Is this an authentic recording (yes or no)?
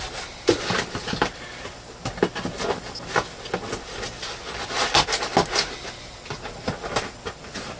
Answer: yes